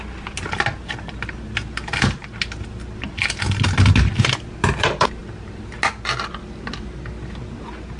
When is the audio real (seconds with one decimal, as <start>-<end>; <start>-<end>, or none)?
0.0-8.0